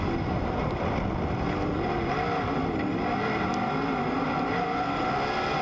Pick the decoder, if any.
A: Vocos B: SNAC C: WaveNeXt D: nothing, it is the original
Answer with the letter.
D